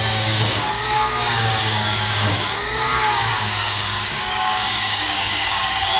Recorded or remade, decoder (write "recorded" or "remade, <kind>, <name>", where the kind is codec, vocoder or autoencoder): remade, codec, DAC